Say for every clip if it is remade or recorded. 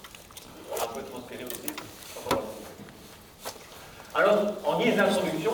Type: recorded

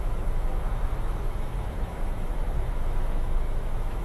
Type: remade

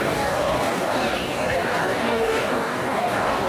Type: remade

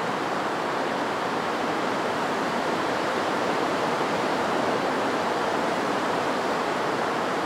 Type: remade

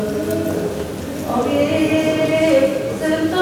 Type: recorded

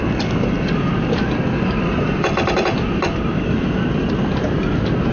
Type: recorded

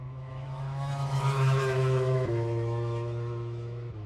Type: remade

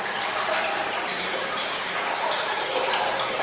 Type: recorded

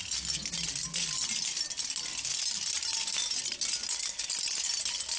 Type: recorded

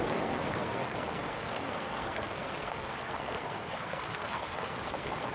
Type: remade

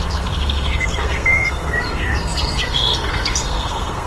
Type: remade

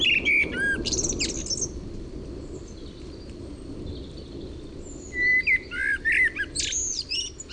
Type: recorded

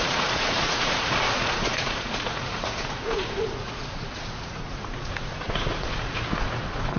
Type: remade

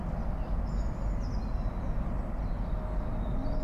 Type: recorded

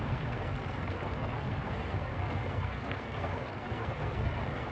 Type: remade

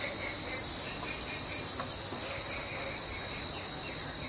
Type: recorded